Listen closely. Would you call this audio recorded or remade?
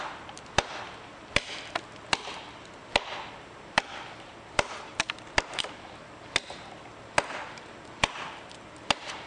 recorded